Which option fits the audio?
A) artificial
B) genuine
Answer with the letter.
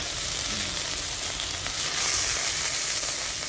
B